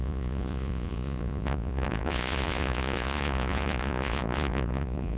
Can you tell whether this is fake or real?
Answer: fake